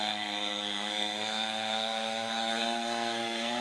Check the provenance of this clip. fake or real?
fake